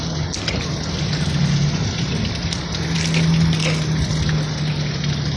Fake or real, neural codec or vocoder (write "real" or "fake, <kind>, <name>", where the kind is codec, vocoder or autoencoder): real